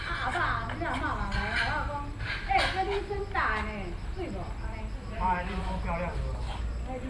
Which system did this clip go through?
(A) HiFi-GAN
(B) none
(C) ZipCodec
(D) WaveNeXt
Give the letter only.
B